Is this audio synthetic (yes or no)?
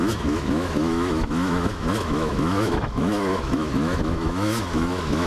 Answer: yes